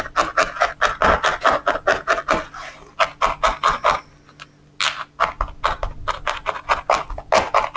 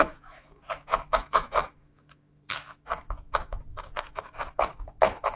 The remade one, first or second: second